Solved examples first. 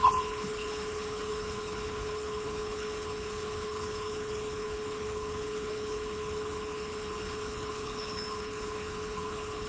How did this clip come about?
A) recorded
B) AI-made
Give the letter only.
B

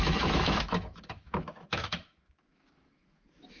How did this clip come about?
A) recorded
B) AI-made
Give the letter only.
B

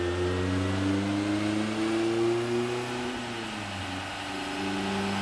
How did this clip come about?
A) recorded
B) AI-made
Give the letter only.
A